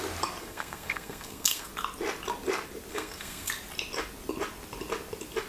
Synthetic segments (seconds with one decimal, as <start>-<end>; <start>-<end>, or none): 0.4-1.7; 2.9-3.5